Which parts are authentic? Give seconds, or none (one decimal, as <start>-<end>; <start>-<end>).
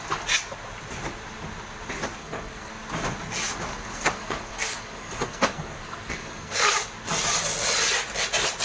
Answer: 0.0-2.2; 2.7-3.7; 6.7-8.6